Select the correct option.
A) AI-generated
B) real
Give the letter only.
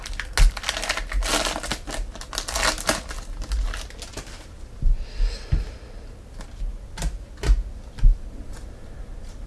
B